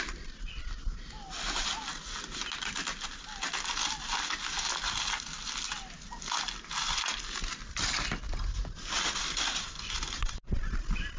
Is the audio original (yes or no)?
yes